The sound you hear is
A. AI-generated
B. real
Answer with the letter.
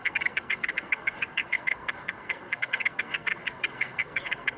A